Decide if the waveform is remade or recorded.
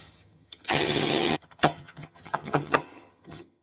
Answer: remade